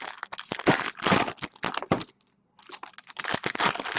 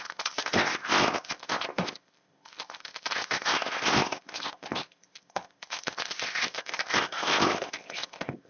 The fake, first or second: second